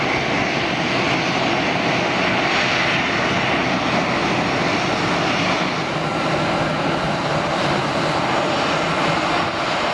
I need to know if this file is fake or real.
real